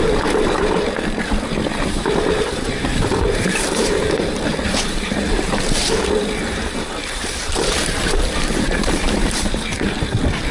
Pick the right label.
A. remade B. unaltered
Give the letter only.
A